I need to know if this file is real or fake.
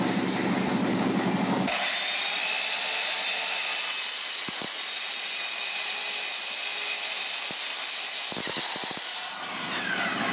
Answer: real